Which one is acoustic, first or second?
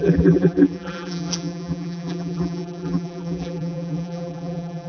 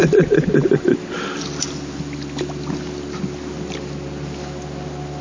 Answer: second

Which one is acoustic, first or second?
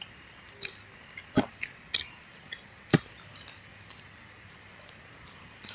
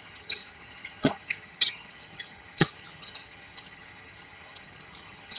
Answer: first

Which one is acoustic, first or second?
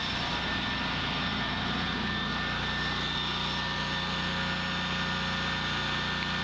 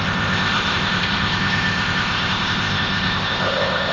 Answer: first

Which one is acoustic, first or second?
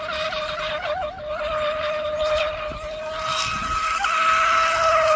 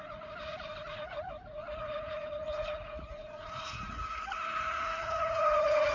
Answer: first